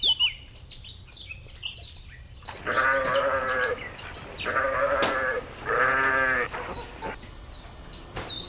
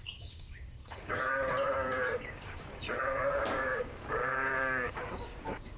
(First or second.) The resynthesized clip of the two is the second